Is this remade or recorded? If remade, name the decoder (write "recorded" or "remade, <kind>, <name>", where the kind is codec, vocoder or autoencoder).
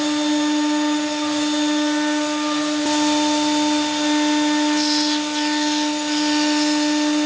recorded